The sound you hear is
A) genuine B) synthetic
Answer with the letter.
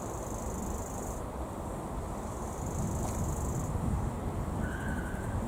B